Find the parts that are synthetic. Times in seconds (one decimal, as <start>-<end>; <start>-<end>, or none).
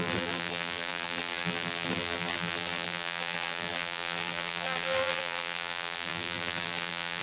0.0-7.2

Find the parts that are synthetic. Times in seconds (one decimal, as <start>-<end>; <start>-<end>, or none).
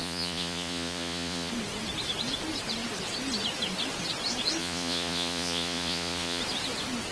0.0-1.5; 4.6-6.4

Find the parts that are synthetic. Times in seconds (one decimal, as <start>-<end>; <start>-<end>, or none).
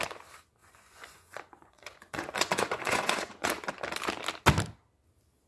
0.6-3.5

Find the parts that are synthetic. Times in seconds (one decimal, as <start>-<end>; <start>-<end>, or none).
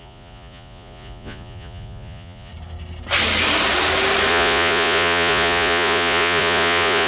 0.0-2.5; 4.3-7.1